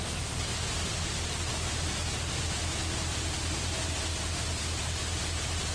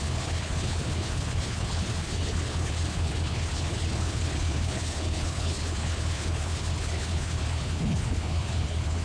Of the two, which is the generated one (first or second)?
second